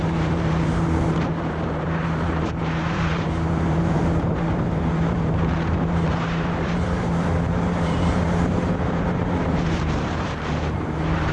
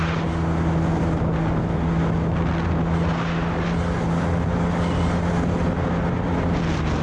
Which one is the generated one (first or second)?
first